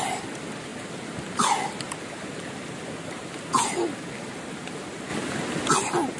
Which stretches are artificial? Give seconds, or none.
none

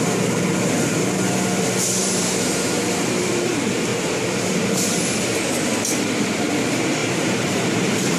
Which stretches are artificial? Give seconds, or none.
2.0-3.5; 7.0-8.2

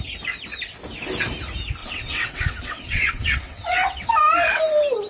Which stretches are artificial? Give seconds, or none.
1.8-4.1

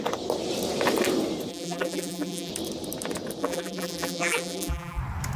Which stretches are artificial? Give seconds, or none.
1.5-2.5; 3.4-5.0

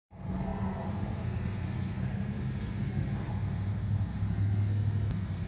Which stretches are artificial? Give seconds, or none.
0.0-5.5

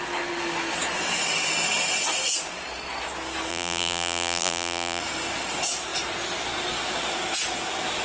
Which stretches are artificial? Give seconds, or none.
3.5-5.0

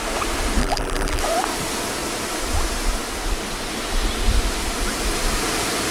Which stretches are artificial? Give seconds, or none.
0.6-1.2

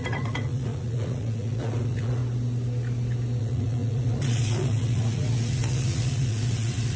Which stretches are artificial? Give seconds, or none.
0.0-2.2; 3.4-7.0